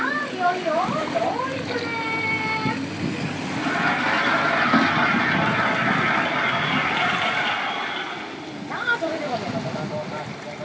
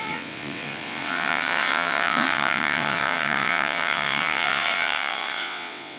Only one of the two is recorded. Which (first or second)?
first